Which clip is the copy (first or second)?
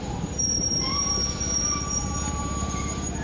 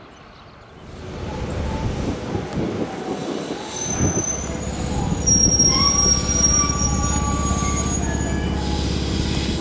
first